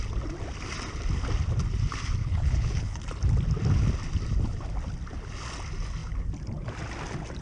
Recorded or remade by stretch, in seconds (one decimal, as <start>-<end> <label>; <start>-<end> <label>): 0.0-2.2 recorded; 2.2-3.0 remade; 3.0-7.4 recorded